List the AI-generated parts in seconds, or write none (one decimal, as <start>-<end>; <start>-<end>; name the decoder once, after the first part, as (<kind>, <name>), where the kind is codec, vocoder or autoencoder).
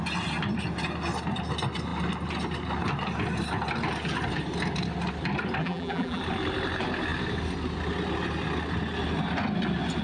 5.6-6.2 (vocoder, BigVGAN v2)